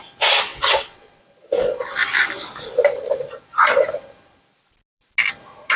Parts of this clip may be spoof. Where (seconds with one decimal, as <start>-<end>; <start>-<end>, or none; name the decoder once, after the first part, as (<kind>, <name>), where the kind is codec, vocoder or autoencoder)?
0.5-1.2 (vocoder, WaveNeXt)